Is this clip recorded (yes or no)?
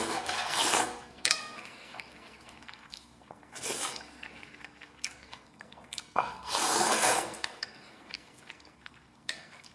no